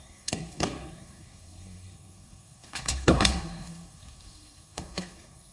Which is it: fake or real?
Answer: fake